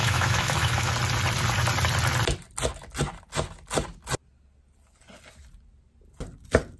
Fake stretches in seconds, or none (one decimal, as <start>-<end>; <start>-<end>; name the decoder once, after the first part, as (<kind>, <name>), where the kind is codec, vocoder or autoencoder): 0.0-0.9 (autoencoder, DAC-VAE)